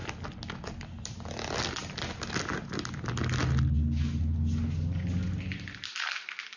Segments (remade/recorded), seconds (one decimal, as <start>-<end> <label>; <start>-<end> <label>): 0.0-6.6 recorded